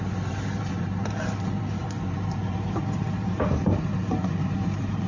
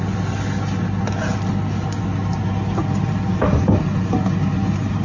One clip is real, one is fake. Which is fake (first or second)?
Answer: first